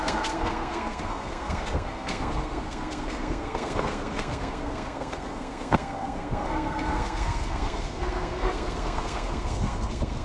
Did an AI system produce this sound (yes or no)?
yes